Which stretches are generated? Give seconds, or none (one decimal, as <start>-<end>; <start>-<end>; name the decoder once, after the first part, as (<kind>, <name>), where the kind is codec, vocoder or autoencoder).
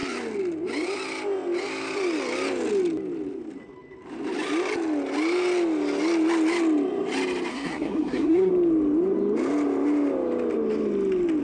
7.5-8.5 (codec, SNAC)